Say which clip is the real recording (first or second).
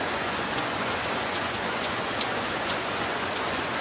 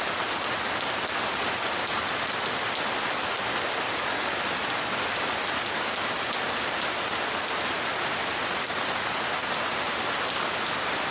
second